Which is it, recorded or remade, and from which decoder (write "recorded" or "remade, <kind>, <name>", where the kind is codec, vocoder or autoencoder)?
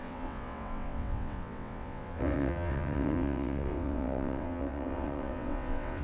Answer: remade, vocoder, WaveNeXt